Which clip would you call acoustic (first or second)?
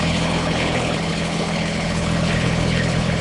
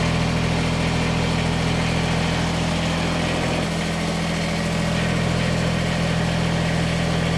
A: second